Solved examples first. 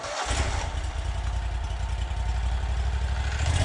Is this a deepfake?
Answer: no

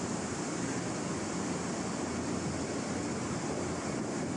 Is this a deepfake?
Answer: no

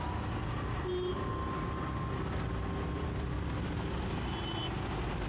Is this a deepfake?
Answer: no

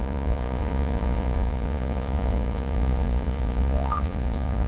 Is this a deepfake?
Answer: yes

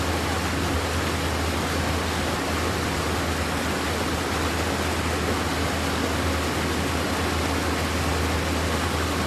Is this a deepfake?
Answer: no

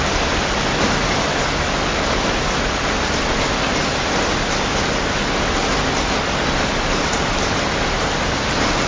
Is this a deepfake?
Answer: no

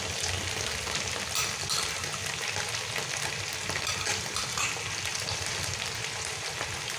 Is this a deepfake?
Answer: no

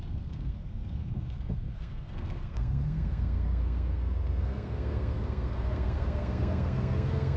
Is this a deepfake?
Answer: yes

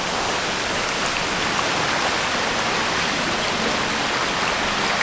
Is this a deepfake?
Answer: no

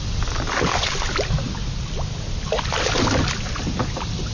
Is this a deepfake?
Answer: no